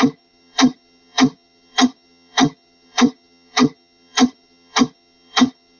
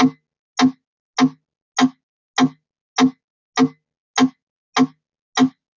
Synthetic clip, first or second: first